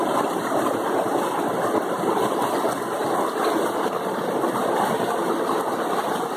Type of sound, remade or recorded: recorded